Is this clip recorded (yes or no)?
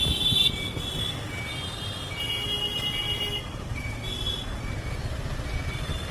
yes